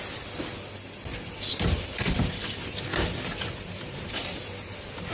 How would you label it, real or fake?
fake